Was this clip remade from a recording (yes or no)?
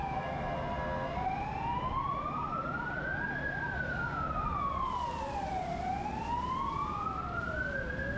no